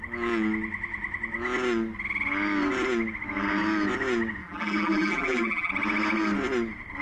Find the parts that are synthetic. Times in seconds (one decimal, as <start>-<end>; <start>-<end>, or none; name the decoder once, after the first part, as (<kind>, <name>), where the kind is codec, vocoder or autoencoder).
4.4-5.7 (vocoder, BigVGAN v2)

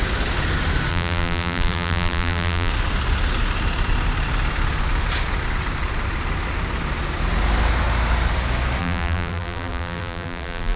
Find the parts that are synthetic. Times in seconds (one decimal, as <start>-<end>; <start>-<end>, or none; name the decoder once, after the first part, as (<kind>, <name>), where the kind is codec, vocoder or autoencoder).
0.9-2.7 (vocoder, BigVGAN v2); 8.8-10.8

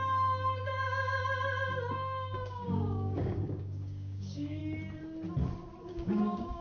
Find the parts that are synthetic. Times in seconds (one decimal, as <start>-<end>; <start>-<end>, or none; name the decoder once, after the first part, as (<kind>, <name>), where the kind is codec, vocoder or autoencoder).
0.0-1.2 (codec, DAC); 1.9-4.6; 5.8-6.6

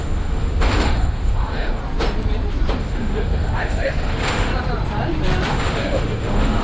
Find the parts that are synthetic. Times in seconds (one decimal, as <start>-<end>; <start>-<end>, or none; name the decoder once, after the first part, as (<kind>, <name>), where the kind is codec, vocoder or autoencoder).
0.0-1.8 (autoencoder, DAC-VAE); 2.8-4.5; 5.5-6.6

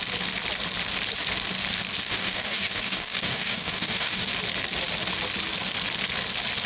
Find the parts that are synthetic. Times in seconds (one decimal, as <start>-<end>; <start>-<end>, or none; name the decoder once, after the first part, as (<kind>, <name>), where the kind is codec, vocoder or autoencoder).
2.0-4.3 (codec, DAC)

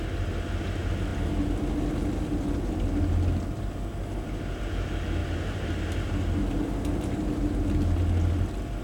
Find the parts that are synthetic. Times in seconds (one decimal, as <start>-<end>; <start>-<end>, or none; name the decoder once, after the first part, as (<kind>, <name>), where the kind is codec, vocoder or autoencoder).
none

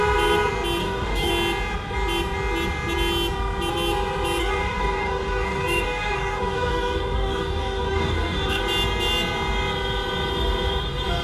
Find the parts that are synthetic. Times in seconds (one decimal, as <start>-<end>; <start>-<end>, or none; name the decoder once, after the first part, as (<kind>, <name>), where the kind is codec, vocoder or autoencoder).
0.8-1.3 (codec, DAC); 4.4-8.6

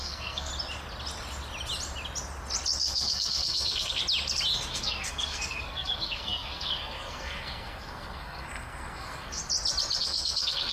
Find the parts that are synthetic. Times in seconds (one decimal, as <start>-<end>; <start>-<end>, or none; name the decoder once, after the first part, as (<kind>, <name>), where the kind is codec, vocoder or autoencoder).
0.0-0.5 (codec, SNAC); 2.8-4.0; 4.7-9.4; 10.0-10.7